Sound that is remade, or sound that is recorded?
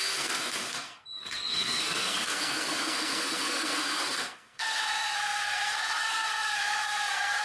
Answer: remade